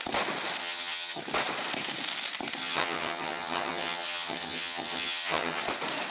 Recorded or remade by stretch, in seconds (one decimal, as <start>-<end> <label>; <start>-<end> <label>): 0.0-0.6 recorded; 0.6-1.2 remade; 1.2-2.6 recorded; 2.6-5.6 remade; 5.6-6.1 recorded